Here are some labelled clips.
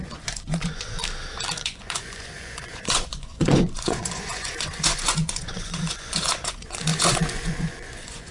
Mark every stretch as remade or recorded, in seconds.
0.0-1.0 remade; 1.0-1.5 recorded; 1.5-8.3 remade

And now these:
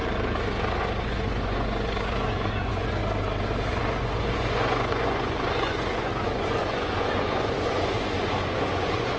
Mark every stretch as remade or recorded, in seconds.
0.0-0.8 recorded; 0.8-3.0 remade; 3.0-3.7 recorded; 3.7-9.2 remade

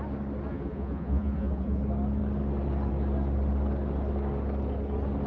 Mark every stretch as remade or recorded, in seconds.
0.0-0.5 recorded; 0.5-1.8 remade; 1.8-5.3 recorded

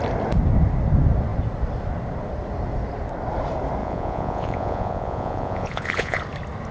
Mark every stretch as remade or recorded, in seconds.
0.0-3.8 recorded; 3.8-6.2 remade; 6.2-6.7 recorded